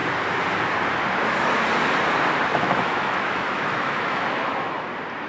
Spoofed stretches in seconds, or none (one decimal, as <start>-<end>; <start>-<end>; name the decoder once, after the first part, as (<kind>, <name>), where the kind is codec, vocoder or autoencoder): 2.5-4.8 (autoencoder, DAC-VAE)